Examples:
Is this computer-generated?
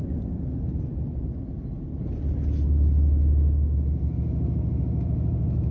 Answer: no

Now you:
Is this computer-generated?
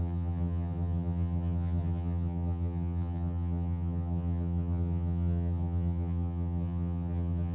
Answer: yes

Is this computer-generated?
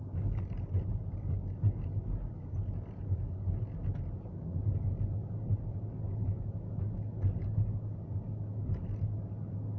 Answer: no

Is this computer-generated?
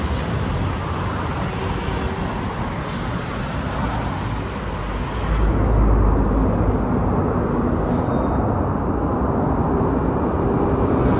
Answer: no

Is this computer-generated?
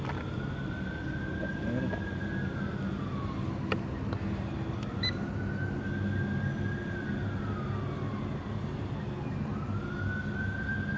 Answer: no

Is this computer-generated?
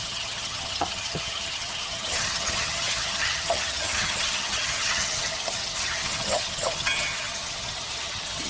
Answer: yes